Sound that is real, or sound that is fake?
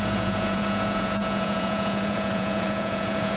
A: fake